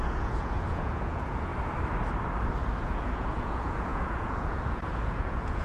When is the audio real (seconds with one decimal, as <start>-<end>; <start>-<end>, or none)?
1.5-2.8